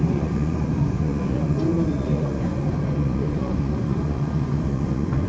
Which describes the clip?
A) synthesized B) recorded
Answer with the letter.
A